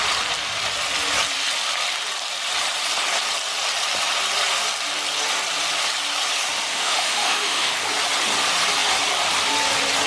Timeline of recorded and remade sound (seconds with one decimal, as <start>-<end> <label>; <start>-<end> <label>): 0.0-6.7 recorded; 6.7-7.8 remade; 7.8-10.1 recorded